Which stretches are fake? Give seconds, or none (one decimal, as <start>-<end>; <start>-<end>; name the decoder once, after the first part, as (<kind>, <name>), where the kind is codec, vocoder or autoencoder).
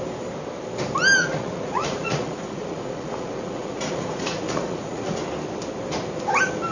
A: 1.2-5.2 (vocoder, Vocos)